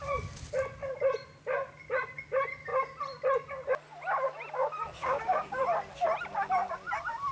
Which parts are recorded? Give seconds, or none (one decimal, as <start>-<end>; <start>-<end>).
0.0-5.0; 5.6-7.3